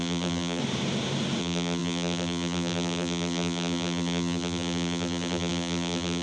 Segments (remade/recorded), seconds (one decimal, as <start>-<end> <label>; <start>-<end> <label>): 0.0-0.6 remade; 0.6-1.4 recorded; 1.4-6.2 remade